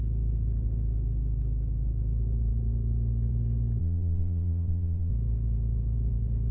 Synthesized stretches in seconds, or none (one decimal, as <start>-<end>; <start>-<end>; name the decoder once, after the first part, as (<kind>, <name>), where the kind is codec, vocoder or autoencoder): 3.8-5.1 (vocoder, Vocos)